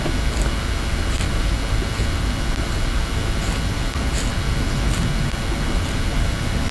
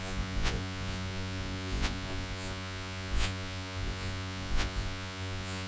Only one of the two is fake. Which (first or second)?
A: second